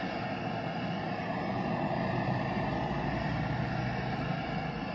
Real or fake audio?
real